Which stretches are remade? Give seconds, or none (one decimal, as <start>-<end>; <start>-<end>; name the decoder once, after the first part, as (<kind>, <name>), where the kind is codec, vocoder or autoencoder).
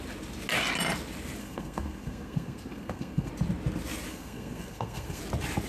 1.4-3.3 (codec, SNAC); 4.1-5.2